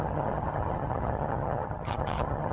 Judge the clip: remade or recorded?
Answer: remade